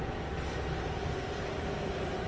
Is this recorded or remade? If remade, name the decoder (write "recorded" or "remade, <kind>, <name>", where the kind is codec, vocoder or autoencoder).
recorded